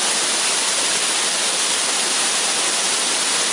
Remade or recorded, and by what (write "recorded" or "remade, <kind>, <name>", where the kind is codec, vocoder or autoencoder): recorded